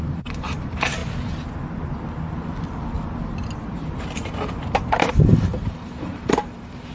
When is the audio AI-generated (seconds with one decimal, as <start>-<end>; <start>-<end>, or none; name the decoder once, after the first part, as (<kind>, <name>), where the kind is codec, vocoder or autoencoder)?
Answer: 0.0-1.0 (vocoder, BigVGAN v2); 5.1-6.9